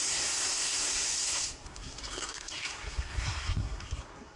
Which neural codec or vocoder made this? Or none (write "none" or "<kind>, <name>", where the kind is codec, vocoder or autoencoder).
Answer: codec, SNAC